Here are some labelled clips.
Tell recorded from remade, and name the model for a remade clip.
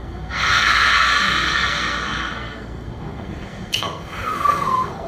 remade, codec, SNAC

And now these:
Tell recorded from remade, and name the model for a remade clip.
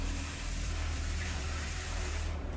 remade, vocoder, BigVGAN v2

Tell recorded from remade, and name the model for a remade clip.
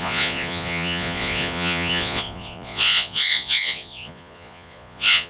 remade, vocoder, Vocos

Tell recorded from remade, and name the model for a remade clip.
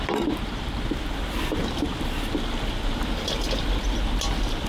recorded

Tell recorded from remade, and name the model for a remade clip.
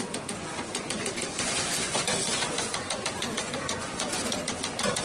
remade, vocoder, Vocos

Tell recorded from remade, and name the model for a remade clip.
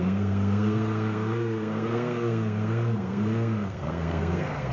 remade, codec, SNAC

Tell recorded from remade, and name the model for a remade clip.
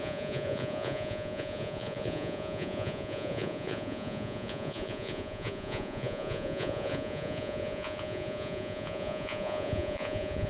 remade, vocoder, Vocos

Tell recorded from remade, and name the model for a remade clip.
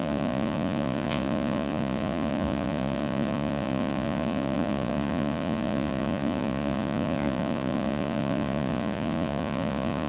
remade, vocoder, Vocos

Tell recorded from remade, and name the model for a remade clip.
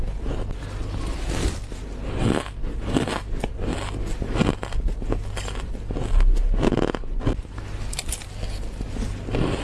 recorded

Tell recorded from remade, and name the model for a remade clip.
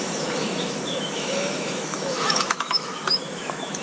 remade, autoencoder, DAC-VAE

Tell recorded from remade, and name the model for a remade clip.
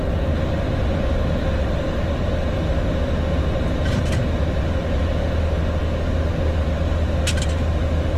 recorded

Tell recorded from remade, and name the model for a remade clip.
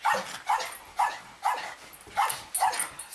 recorded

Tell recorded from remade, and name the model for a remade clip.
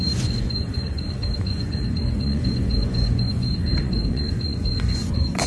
remade, vocoder, Vocos